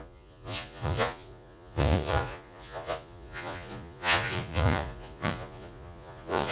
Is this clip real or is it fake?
fake